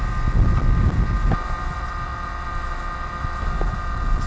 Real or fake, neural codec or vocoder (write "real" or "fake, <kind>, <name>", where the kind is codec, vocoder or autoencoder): real